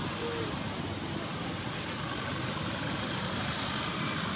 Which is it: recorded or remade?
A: recorded